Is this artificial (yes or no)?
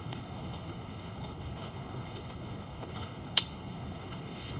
yes